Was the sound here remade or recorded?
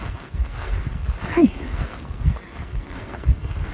remade